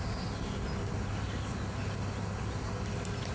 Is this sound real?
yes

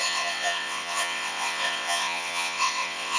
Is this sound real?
no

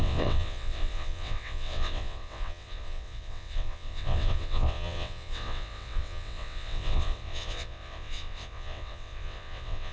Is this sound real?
no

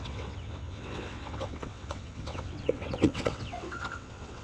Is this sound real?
no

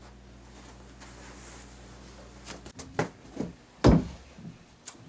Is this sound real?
yes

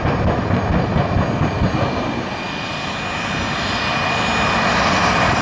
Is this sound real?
yes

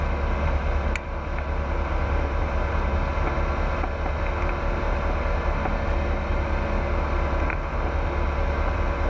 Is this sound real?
yes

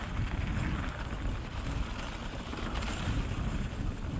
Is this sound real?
yes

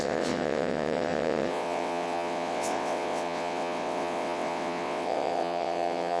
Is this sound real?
no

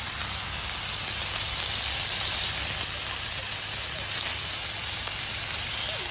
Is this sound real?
yes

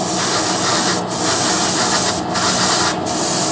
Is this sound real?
yes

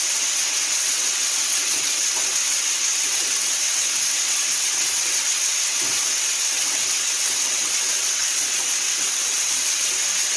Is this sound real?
no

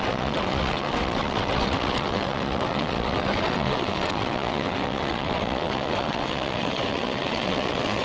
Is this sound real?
no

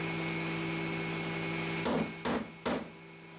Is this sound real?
yes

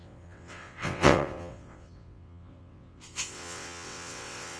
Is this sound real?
no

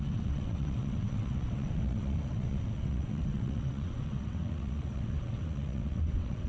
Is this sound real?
no